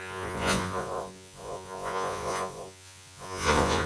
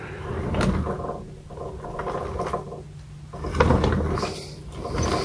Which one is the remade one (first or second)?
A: first